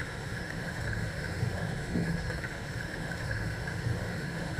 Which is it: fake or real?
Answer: fake